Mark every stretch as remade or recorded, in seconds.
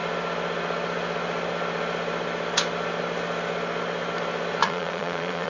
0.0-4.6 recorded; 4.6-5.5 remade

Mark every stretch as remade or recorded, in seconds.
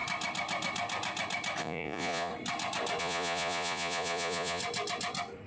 0.0-1.6 recorded; 1.6-2.3 remade; 2.3-3.0 recorded; 3.0-4.6 remade; 4.6-5.5 recorded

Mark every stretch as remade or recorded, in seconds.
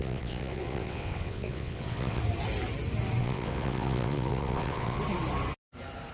0.0-2.2 remade; 2.2-3.2 recorded; 3.2-5.0 remade; 5.0-6.1 recorded